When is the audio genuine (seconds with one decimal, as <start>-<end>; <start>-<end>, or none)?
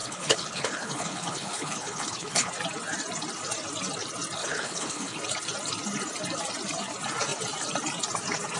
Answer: 2.5-4.4; 5.2-8.6